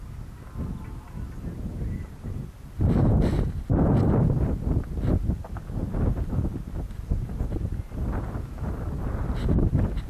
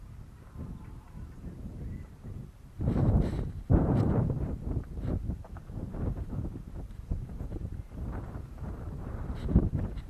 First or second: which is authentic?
first